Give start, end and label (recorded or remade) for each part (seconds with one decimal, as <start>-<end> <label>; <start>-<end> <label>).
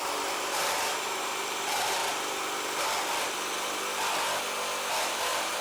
0.0-2.0 remade; 2.0-5.0 recorded; 5.0-5.6 remade